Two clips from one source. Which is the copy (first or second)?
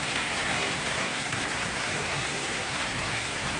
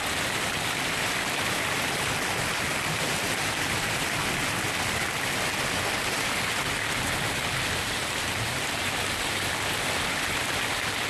first